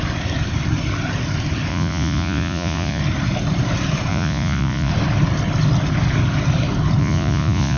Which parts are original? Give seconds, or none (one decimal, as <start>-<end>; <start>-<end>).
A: 0.0-1.7; 3.0-4.1; 4.9-7.0